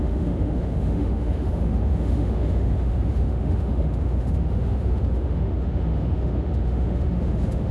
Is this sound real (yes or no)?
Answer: no